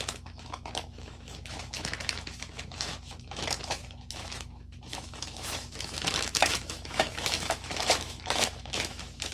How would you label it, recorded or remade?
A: remade